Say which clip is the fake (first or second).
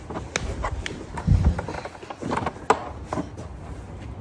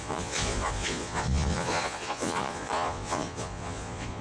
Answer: second